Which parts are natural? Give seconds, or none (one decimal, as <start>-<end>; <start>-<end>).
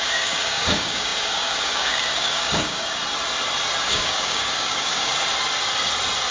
3.0-3.8; 5.1-6.3